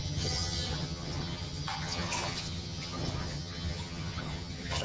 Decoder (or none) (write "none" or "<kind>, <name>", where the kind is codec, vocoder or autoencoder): vocoder, HiFi-GAN